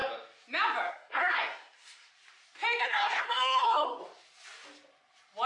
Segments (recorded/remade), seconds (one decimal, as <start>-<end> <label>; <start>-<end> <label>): 0.0-0.9 recorded; 0.9-2.1 remade; 2.1-2.8 recorded; 2.8-4.0 remade; 4.0-5.5 recorded